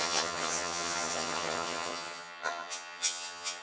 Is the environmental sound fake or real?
fake